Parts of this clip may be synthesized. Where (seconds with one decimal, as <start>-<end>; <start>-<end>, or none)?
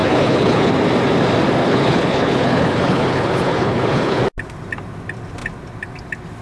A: 0.0-0.7; 1.6-4.2